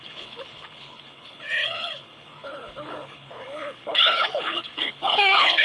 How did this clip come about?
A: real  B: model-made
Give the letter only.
B